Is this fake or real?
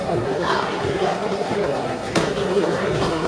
fake